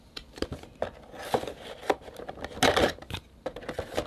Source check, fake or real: real